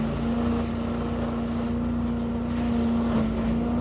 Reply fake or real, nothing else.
real